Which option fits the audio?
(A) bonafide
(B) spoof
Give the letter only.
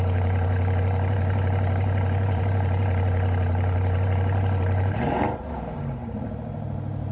B